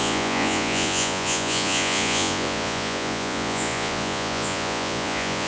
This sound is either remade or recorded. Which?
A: remade